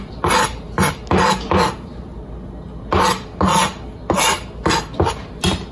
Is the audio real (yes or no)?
yes